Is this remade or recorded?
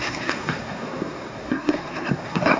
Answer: remade